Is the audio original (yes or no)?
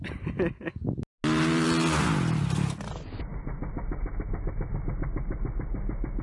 yes